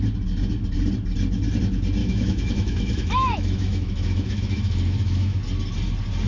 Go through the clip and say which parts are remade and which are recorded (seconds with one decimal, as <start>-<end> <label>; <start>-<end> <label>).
0.0-2.0 recorded; 2.0-5.4 remade; 5.4-6.3 recorded